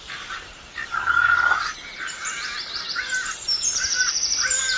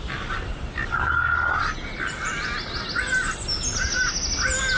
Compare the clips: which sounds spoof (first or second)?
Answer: first